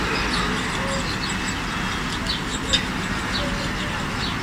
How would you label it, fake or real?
real